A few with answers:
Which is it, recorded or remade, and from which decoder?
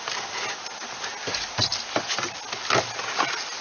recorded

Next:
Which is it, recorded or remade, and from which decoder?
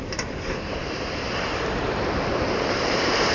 remade, vocoder, BigVGAN v2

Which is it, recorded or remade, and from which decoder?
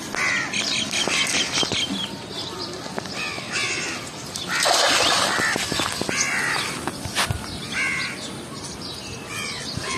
recorded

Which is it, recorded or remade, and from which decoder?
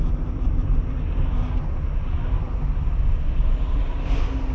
recorded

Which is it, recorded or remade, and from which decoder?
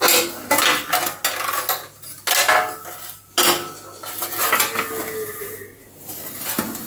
recorded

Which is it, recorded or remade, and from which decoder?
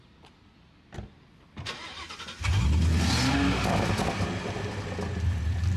recorded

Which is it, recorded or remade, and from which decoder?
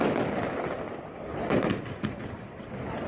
recorded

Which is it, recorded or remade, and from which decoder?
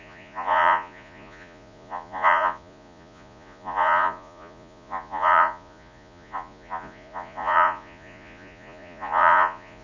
remade, vocoder, Vocos